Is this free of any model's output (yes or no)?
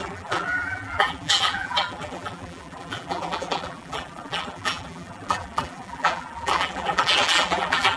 no